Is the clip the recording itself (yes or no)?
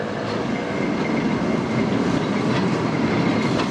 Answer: yes